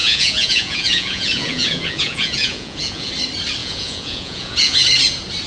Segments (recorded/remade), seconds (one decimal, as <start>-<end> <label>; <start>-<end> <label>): 0.0-3.1 remade; 3.1-3.6 recorded; 3.6-4.8 remade; 4.8-5.5 recorded